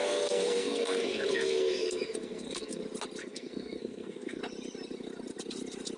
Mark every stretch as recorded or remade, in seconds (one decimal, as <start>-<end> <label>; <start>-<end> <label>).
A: 0.0-2.8 remade; 2.8-3.2 recorded; 3.2-4.4 remade; 4.4-6.0 recorded